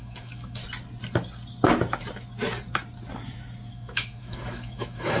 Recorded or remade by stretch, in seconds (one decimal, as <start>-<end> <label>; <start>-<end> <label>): 0.0-0.6 remade; 0.6-3.7 recorded; 3.7-5.2 remade